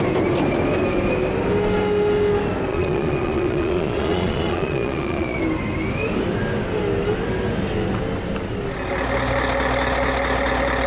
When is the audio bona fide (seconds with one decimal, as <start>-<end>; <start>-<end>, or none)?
0.0-2.7; 5.4-10.9